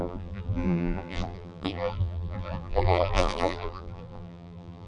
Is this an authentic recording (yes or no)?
no